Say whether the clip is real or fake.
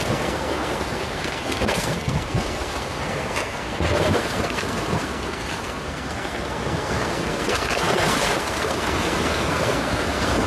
fake